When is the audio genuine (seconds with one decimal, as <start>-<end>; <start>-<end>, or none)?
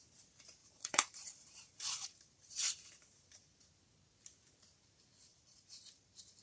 0.0-0.6; 3.6-5.3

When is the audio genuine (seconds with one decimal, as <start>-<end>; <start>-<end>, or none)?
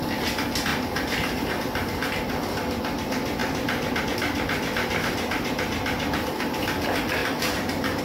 0.0-0.7; 1.5-3.4; 4.0-7.2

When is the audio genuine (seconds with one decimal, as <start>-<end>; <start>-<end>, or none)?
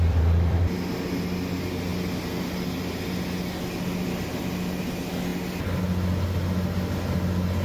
0.6-7.6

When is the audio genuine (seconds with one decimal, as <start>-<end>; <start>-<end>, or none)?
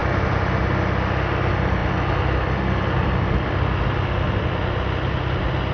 0.0-5.7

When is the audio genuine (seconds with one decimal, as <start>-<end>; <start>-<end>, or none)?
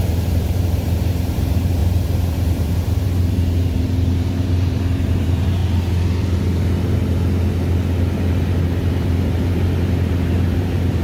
5.6-8.9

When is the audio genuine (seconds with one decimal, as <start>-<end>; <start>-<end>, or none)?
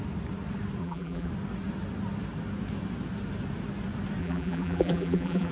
0.0-0.8; 1.3-4.2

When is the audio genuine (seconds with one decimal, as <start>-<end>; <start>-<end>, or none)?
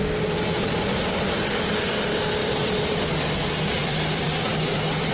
0.0-2.4; 3.1-3.8; 4.4-5.1